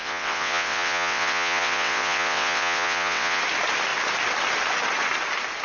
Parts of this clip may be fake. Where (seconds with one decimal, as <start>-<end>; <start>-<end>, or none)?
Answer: 0.0-3.4